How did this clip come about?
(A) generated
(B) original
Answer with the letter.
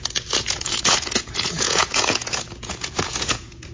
A